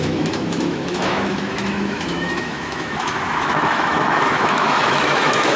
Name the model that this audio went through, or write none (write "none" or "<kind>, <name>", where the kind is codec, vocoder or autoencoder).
autoencoder, DAC-VAE